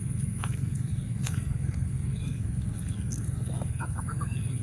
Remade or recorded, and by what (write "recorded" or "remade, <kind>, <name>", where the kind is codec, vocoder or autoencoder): remade, codec, SNAC